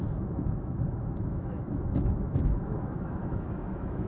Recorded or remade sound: remade